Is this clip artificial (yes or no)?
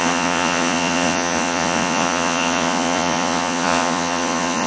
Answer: yes